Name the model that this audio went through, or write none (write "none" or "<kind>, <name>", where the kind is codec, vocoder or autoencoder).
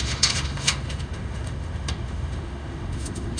autoencoder, DAC-VAE